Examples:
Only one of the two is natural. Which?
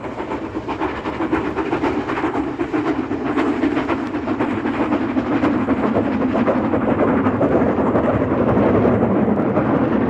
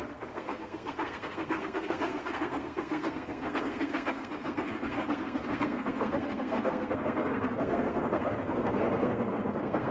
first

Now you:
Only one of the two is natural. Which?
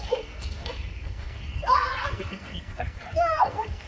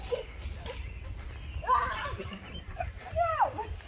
second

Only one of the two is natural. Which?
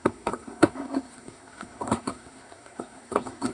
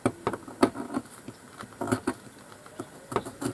second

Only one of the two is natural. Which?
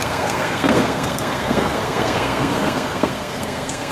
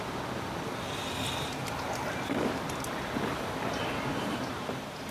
second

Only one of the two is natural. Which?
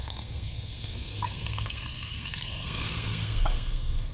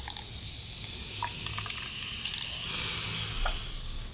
second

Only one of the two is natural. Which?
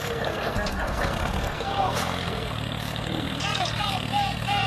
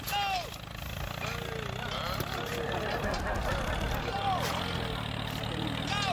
second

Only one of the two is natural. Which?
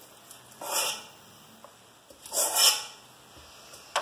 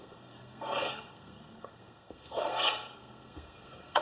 first